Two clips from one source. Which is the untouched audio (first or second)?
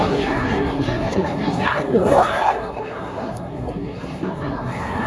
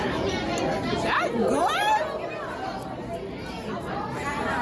second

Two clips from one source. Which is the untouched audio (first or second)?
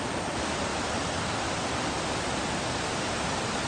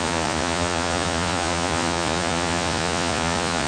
first